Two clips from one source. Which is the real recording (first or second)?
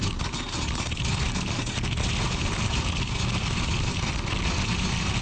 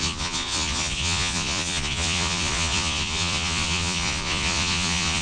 first